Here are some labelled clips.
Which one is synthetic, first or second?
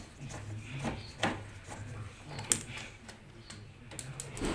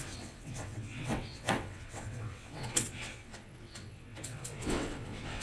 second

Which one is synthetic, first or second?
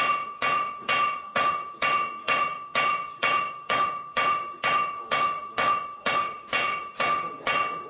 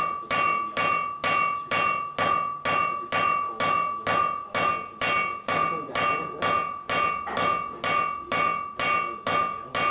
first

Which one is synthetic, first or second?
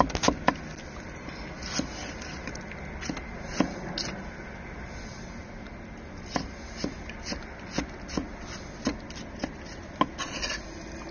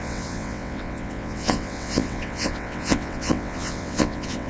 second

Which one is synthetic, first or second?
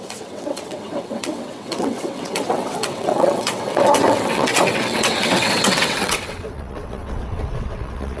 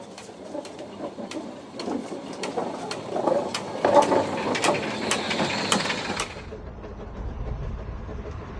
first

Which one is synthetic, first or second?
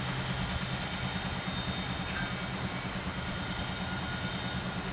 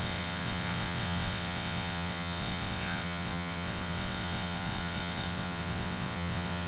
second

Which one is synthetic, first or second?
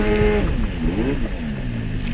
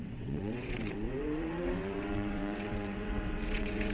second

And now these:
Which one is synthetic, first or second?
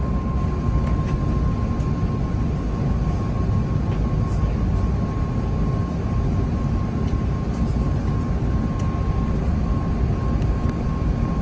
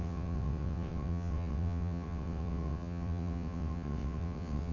second